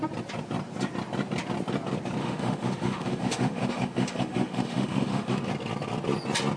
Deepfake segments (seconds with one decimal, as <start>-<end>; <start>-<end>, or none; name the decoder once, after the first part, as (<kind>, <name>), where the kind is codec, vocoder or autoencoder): 2.2-5.5 (autoencoder, DAC-VAE)